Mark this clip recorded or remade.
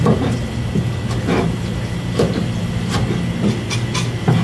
recorded